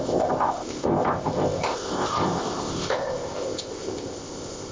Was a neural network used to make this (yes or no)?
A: yes